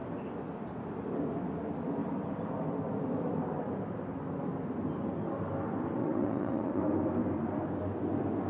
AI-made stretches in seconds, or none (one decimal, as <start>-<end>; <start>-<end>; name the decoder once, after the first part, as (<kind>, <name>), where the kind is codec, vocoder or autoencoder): 6.0-6.8 (vocoder, Vocos)